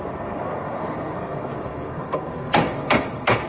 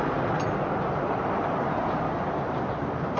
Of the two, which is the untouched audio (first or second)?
second